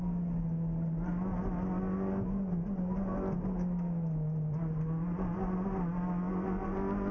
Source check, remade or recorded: recorded